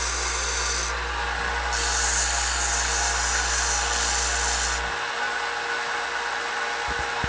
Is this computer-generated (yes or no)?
no